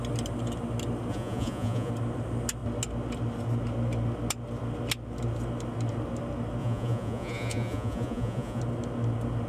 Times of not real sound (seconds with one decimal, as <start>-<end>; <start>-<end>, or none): 1.1-1.9; 6.6-8.6

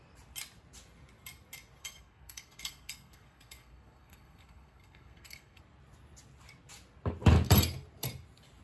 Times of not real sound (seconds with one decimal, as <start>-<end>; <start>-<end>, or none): 1.8-5.6

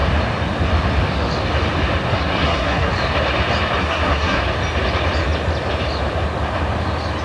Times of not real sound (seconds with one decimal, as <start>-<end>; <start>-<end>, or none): 2.1-2.9; 3.8-4.4

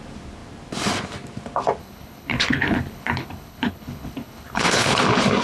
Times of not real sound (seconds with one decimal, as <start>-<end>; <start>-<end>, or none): 1.8-5.0

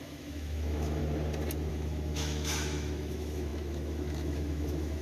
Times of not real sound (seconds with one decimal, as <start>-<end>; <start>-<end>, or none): 0.0-1.0; 1.7-5.0

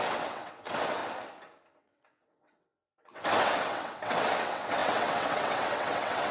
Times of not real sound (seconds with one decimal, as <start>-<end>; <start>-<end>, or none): 0.0-1.0; 1.8-6.3

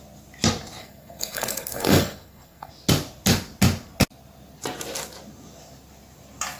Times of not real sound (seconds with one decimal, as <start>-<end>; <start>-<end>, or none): 0.8-2.7

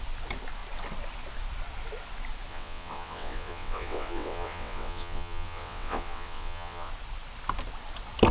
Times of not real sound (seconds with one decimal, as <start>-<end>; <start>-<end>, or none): 2.5-6.9